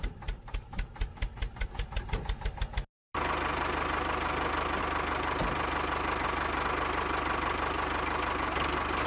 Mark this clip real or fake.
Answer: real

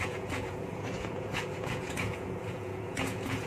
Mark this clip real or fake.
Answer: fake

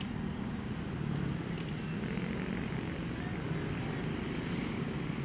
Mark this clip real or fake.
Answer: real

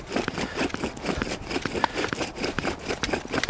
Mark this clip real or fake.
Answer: real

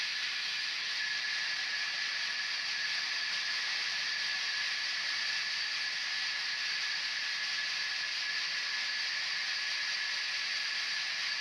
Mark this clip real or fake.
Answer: real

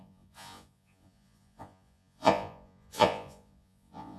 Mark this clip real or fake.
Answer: fake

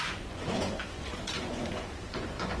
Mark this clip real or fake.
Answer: fake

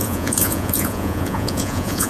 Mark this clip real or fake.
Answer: fake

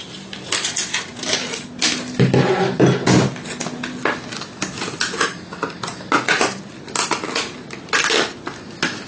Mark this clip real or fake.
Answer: real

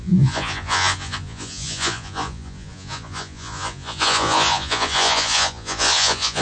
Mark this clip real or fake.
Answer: fake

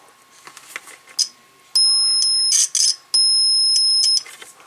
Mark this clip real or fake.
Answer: real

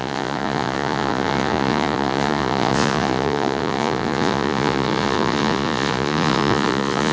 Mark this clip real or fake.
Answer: fake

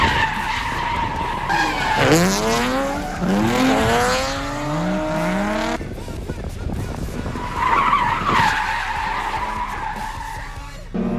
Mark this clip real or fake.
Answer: real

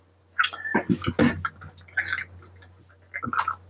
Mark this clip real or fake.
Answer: real